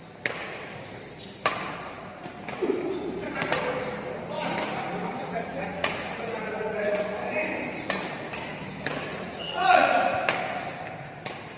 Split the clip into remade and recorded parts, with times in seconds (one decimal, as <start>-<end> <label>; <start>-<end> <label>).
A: 0.0-1.7 recorded; 1.7-2.3 remade; 2.3-5.2 recorded; 5.2-6.8 remade; 6.8-9.1 recorded; 9.1-9.9 remade; 9.9-11.6 recorded